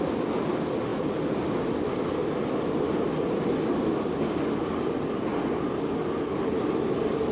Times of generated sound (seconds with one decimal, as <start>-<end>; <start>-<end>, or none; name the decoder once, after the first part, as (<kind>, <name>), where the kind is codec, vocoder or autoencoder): 0.9-1.6 (vocoder, BigVGAN v2)